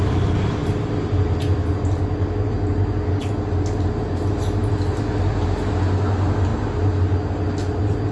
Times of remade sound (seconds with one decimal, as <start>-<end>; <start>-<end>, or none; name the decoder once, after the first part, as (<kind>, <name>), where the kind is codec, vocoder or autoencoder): none